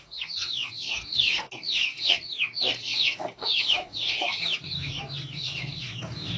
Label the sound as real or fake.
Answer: fake